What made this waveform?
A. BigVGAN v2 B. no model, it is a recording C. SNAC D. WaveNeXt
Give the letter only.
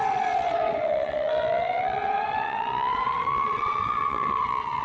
D